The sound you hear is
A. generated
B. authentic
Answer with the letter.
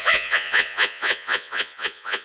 A